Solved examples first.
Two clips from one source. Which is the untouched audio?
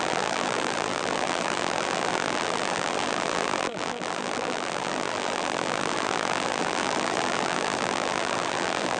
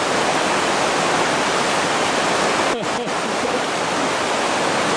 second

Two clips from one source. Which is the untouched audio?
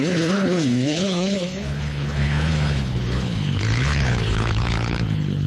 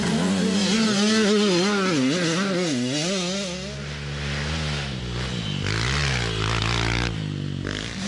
second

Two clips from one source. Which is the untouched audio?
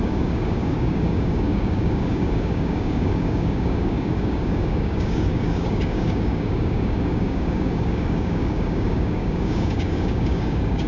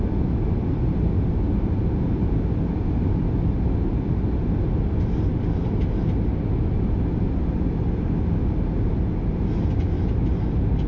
second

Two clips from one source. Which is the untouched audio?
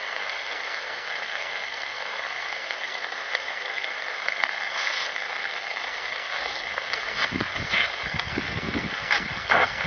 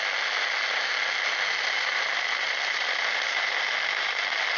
second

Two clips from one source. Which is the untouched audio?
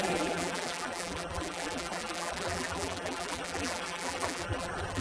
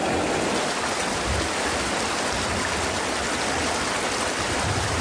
second